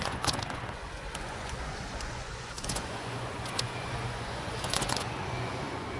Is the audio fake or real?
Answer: fake